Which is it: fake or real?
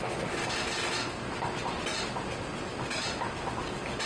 real